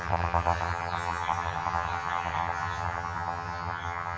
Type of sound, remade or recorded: remade